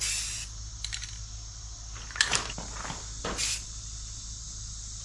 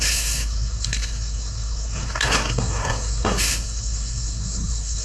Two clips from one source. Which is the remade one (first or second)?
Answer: second